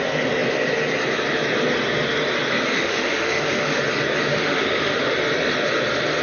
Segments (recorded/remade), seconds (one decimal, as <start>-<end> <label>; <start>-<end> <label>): 0.0-2.7 recorded; 2.7-3.8 remade; 3.8-4.3 recorded; 4.3-5.0 remade; 5.0-6.2 recorded